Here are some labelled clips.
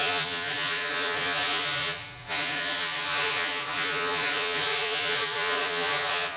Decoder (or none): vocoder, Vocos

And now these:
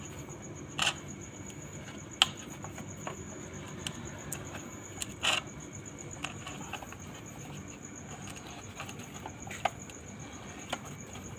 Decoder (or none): none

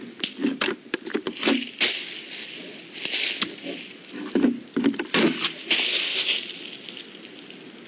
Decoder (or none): none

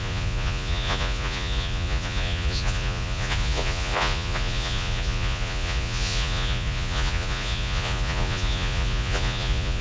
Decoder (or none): vocoder, Vocos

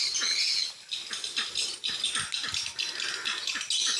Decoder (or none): none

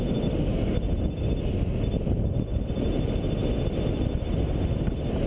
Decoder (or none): none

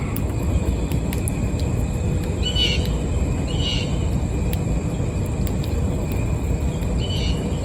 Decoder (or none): none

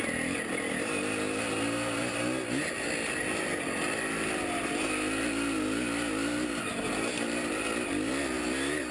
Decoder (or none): none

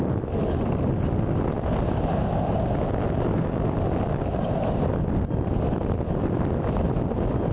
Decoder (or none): none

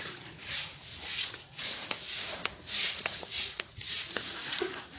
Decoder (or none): vocoder, Vocos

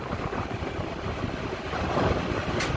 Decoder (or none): none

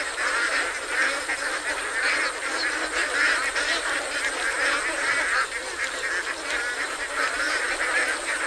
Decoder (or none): none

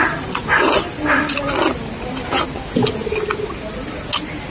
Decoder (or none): none